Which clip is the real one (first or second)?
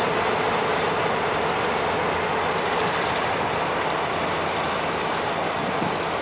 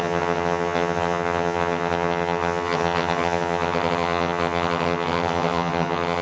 first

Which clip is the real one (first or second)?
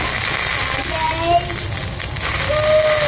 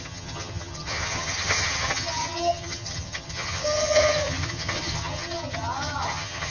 first